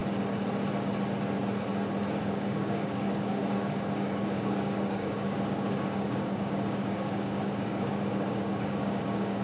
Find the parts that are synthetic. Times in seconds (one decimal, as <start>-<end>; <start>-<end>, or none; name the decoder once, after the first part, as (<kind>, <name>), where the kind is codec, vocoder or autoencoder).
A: 2.2-9.4 (codec, DAC)